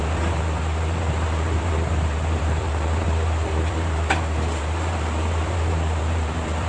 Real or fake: fake